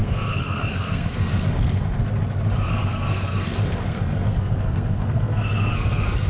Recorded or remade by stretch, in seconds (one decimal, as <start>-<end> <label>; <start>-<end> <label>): 0.0-2.0 remade; 2.0-2.7 recorded; 2.7-6.3 remade